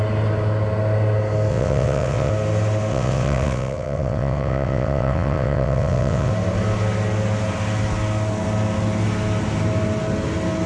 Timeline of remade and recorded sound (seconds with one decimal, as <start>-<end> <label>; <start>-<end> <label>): 0.0-1.5 recorded; 1.5-2.3 remade; 2.3-2.9 recorded; 2.9-6.3 remade; 6.3-10.7 recorded